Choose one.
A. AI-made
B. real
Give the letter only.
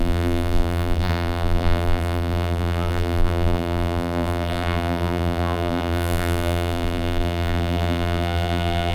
A